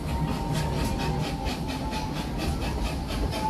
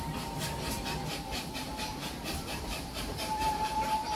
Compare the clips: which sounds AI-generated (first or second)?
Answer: second